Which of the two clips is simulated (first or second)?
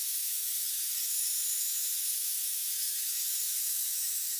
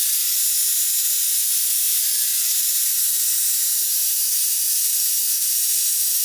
first